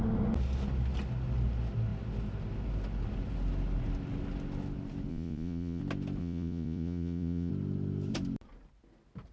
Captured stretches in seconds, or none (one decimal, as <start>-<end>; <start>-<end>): 0.0-5.1; 5.8-6.2; 7.5-9.3